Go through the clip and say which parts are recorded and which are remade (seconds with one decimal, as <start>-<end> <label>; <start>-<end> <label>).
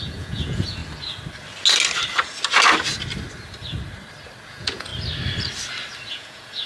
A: 0.0-0.8 remade; 0.8-4.5 recorded; 4.5-4.9 remade; 4.9-6.1 recorded; 6.1-6.7 remade